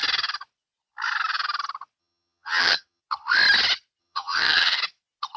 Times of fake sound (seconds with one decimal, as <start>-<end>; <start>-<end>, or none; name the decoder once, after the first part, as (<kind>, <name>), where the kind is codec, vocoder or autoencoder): 2.0-3.0 (vocoder, HiFi-GAN); 4.0-4.8